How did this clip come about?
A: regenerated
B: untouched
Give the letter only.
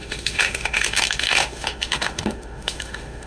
A